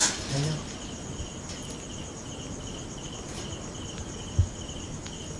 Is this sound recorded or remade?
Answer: recorded